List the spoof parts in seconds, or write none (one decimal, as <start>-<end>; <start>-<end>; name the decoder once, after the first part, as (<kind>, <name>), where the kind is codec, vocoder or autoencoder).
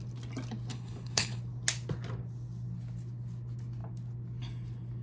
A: 0.7-1.4 (codec, HILCodec)